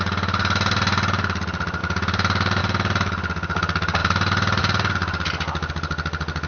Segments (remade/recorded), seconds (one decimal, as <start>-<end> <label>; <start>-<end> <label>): 0.0-1.8 recorded; 1.8-2.6 remade; 2.6-6.5 recorded